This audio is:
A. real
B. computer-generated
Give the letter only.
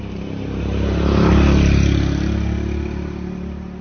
A